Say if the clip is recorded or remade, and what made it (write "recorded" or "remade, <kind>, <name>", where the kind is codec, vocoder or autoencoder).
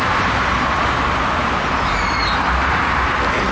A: recorded